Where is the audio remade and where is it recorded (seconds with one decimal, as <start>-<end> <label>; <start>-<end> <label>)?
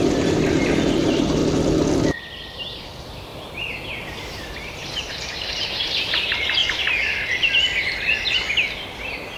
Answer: 0.0-1.4 remade; 1.4-2.8 recorded; 2.8-3.3 remade; 3.3-4.9 recorded; 4.9-6.6 remade; 6.6-9.4 recorded